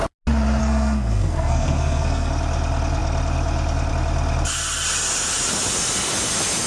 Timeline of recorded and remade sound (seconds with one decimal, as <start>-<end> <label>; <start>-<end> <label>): 0.0-0.6 recorded; 0.6-2.3 remade; 2.3-6.7 recorded